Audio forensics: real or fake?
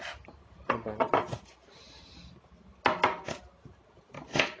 real